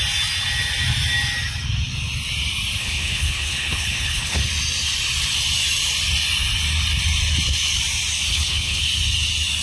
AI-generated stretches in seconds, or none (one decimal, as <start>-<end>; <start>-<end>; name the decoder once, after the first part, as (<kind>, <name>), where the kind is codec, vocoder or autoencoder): 2.8-4.5 (codec, HILCodec); 8.3-8.8